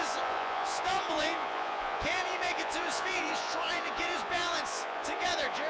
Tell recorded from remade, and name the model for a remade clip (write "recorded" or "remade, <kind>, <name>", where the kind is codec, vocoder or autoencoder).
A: remade, vocoder, Vocos